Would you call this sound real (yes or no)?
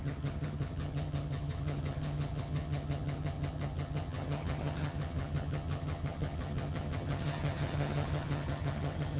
no